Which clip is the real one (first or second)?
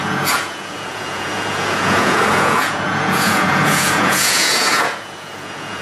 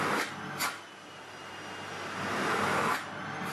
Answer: second